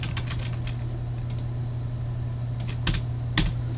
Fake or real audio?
real